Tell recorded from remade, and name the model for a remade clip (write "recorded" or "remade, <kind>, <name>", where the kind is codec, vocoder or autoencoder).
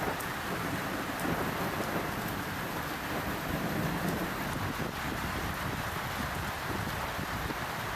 remade, vocoder, BigVGAN v2